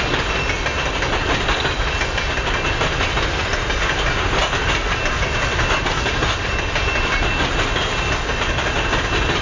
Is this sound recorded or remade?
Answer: recorded